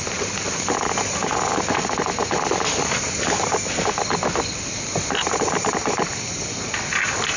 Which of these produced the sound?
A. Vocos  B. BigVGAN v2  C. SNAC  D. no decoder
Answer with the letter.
D